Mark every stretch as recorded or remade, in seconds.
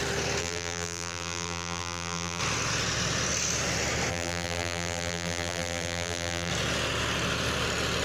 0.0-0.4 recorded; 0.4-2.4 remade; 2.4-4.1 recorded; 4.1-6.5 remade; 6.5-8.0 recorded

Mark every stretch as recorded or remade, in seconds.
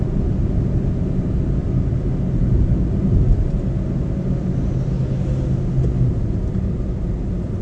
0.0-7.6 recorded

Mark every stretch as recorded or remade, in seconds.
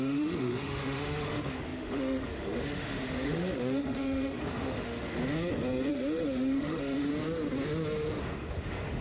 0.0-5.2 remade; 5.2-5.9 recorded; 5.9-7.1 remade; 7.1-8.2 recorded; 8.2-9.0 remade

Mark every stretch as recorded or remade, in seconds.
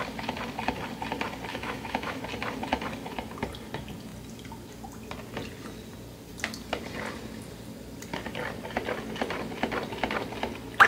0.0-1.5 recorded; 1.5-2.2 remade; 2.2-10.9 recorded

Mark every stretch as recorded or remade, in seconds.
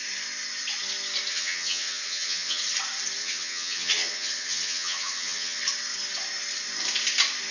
0.0-1.3 recorded; 1.3-2.6 remade; 2.6-3.2 recorded; 3.2-5.6 remade; 5.6-7.5 recorded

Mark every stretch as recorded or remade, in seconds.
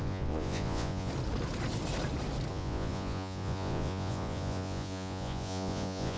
0.0-1.1 remade; 1.1-2.5 recorded; 2.5-6.2 remade